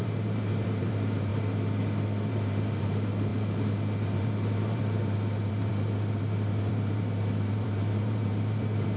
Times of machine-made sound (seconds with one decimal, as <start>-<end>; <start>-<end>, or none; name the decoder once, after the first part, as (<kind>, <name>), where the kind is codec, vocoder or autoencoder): 0.0-1.3 (vocoder, BigVGAN v2); 2.3-9.0